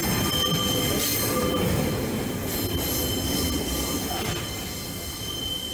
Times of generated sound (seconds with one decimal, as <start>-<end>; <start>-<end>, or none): none